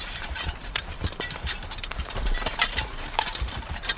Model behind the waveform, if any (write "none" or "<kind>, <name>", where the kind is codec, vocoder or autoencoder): vocoder, BigVGAN v2